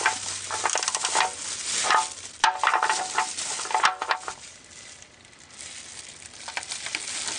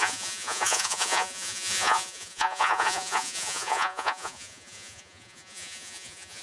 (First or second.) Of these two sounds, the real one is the first